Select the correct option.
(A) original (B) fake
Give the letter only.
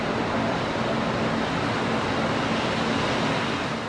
A